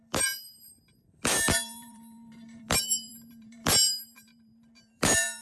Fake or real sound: fake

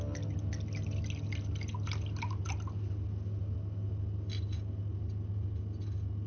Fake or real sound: real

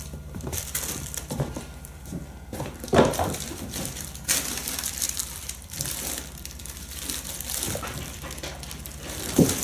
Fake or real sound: fake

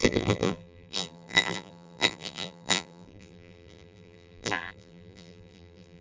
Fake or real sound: fake